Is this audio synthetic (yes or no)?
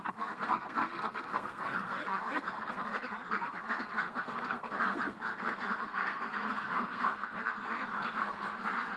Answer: yes